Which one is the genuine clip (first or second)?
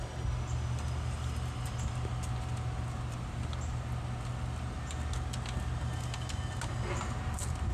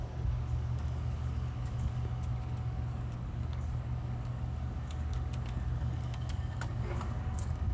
first